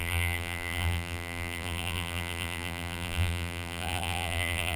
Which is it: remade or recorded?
remade